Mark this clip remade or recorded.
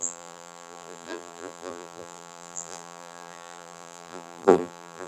remade